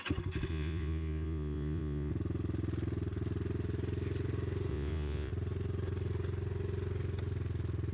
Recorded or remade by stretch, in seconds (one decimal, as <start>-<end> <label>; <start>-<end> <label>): 0.0-0.5 recorded; 0.5-2.1 remade; 2.1-4.7 recorded; 4.7-5.3 remade; 5.3-7.9 recorded